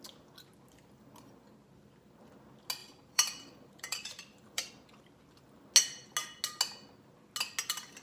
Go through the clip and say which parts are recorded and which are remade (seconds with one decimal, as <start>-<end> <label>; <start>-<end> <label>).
0.0-2.8 recorded; 2.8-4.7 remade; 4.7-8.0 recorded